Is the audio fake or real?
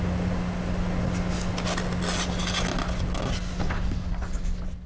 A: real